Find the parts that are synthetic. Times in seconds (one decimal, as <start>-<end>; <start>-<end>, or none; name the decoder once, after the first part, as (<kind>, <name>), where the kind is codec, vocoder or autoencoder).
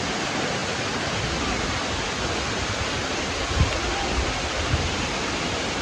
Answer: none